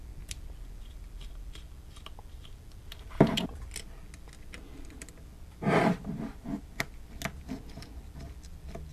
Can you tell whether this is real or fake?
real